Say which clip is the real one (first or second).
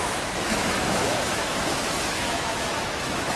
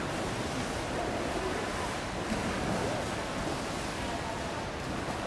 second